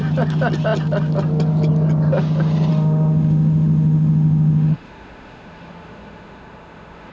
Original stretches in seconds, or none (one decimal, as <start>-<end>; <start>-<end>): 0.0-2.7